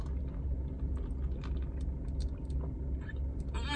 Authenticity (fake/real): real